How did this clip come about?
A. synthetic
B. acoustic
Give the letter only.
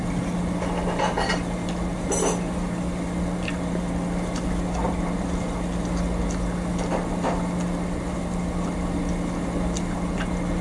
B